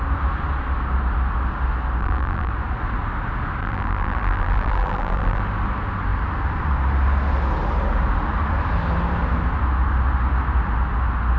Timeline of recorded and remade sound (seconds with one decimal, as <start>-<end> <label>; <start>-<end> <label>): 0.0-2.0 recorded; 2.0-2.5 remade; 2.5-3.6 recorded; 3.6-5.4 remade; 5.4-11.4 recorded